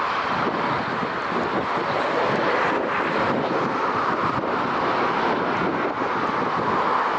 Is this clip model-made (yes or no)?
no